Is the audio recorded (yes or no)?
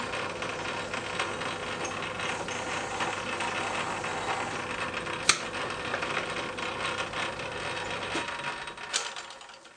yes